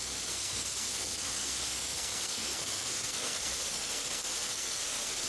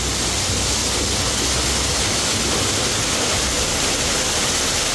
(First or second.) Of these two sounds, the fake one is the first